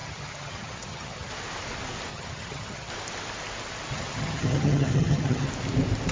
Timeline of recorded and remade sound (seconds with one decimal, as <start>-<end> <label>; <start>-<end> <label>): 0.0-1.3 remade; 1.3-2.1 recorded; 2.1-2.9 remade; 2.9-3.9 recorded; 3.9-5.5 remade; 5.5-6.1 recorded

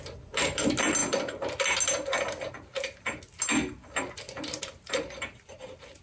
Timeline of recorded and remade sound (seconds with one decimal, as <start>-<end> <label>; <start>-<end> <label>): 0.0-6.0 recorded